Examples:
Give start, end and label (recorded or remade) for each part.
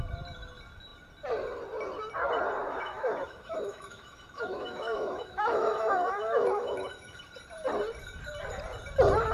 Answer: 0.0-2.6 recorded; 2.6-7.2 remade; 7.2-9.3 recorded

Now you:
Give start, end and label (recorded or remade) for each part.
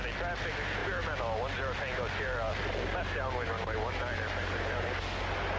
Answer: 0.0-5.6 recorded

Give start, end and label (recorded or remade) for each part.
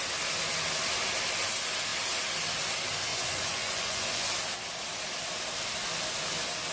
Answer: 0.0-3.1 recorded; 3.1-4.3 remade; 4.3-6.7 recorded